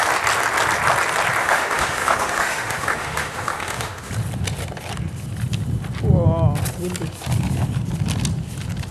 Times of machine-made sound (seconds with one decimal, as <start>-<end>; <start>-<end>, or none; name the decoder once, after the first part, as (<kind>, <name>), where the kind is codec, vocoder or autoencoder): 1.4-4.1 (autoencoder, DAC-VAE)